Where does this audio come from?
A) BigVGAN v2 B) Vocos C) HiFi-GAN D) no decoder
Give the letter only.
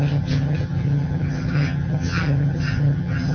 C